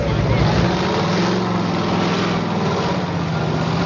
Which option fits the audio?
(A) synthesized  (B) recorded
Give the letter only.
B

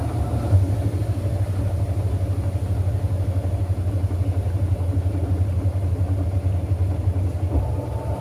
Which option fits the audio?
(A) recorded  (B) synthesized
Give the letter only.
A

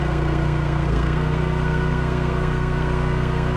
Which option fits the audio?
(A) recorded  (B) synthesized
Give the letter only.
B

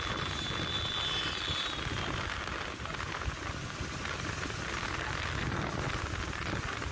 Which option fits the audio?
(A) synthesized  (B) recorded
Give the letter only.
B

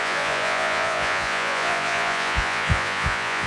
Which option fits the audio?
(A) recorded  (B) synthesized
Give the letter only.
B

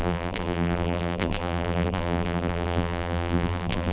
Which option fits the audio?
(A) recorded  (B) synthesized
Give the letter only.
B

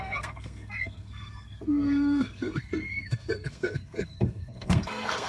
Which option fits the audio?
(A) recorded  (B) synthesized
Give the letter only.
B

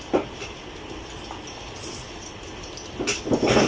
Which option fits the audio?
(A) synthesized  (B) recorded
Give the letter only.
B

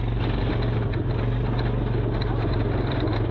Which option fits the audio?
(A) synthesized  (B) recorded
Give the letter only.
B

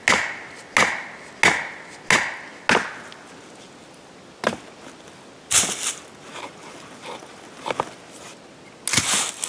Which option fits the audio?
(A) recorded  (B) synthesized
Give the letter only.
A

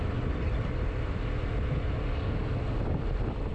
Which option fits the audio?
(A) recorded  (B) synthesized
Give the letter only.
A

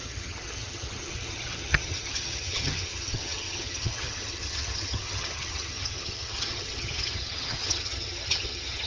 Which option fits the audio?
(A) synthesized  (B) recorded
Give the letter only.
A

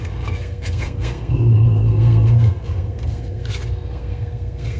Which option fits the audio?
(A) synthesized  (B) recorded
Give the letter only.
A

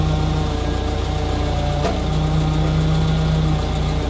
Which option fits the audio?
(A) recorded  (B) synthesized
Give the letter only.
A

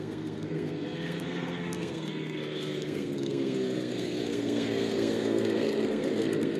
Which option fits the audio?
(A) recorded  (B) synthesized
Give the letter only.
B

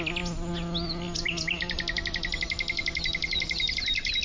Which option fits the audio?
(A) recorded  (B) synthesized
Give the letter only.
A